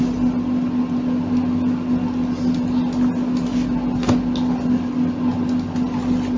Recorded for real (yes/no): yes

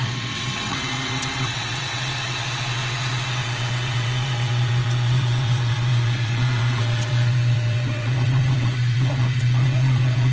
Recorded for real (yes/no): no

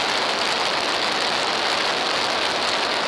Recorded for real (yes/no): yes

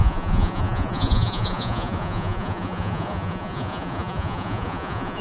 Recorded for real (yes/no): no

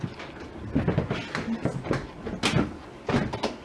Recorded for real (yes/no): yes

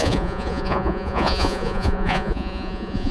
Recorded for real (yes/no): no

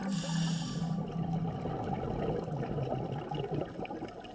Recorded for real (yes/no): yes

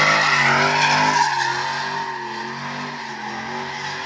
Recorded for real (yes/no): yes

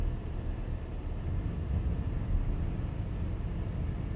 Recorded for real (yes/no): yes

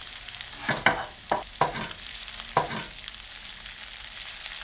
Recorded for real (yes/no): yes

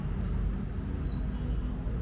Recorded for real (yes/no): yes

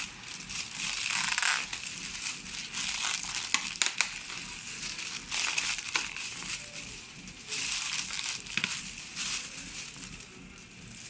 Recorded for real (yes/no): yes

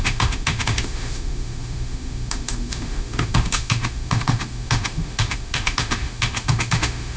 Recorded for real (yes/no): no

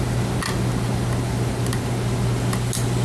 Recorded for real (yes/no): yes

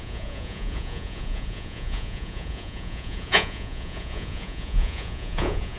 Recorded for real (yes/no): no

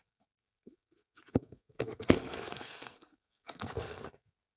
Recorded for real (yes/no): no